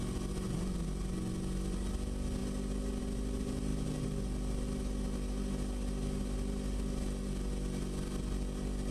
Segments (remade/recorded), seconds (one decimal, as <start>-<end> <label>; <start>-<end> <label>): 0.0-8.9 recorded